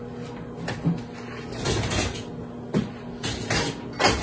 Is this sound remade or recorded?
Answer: recorded